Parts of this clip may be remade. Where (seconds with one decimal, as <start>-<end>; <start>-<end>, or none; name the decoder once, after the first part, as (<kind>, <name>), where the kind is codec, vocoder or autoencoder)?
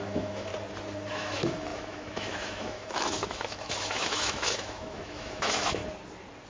0.0-0.5 (autoencoder, DAC-VAE); 1.1-5.8